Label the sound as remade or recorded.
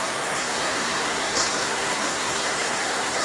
remade